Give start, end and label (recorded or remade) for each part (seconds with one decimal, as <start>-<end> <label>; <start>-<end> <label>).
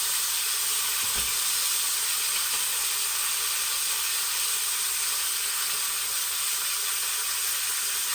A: 0.0-8.1 recorded